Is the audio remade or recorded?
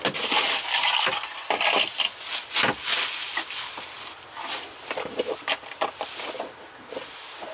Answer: recorded